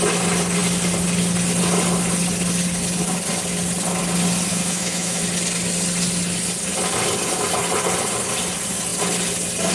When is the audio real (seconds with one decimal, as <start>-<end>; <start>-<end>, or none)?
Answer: 0.0-4.5; 5.2-9.7